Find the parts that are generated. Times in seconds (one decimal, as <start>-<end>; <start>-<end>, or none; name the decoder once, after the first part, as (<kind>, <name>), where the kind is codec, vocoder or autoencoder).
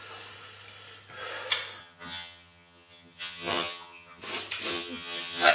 1.8-4.2 (vocoder, HiFi-GAN); 4.7-5.5